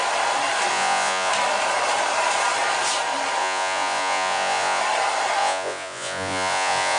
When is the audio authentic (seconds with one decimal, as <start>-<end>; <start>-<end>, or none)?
0.0-0.7; 1.3-3.4; 4.8-5.4